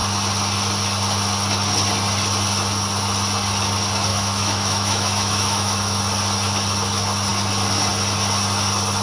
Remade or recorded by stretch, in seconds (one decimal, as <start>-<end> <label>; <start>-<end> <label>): 0.0-4.1 recorded; 4.1-6.0 remade; 6.0-9.0 recorded